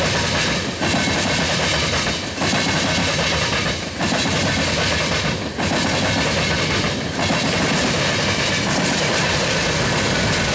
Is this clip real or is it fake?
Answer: real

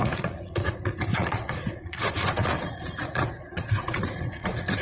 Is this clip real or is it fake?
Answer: fake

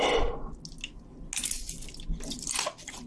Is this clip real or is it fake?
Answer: real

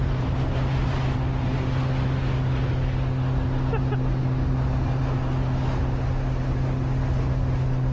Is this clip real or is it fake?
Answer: real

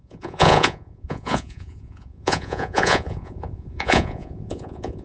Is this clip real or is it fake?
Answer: fake